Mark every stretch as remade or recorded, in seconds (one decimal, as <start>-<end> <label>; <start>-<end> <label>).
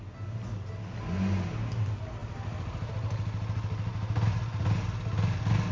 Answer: 0.0-5.7 recorded